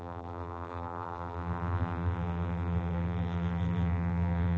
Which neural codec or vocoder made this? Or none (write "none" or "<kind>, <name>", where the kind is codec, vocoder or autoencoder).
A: vocoder, BigVGAN v2